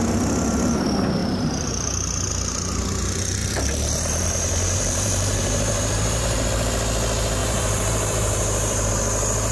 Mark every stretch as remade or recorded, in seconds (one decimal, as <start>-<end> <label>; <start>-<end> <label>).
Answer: 0.0-1.2 recorded; 1.2-2.3 remade; 2.3-3.4 recorded; 3.4-6.2 remade; 6.2-7.4 recorded; 7.4-8.9 remade; 8.9-9.5 recorded